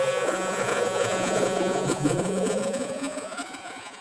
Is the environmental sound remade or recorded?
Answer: remade